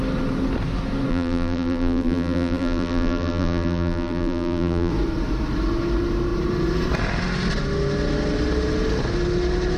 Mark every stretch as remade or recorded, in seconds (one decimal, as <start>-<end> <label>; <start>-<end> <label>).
0.0-1.1 recorded; 1.1-4.9 remade; 4.9-9.8 recorded